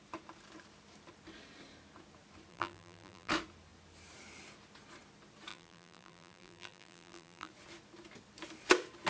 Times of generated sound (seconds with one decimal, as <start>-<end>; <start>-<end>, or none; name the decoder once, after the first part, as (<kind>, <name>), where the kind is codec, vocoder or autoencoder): 2.5-3.3 (vocoder, BigVGAN v2); 5.5-7.5